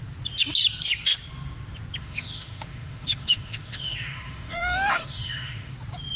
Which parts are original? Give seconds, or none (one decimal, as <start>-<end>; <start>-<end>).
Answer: 0.0-2.0; 5.7-6.2